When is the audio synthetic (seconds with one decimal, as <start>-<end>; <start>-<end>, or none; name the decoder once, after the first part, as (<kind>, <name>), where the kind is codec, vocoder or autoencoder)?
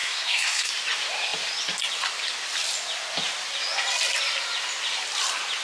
0.0-0.7 (codec, SNAC)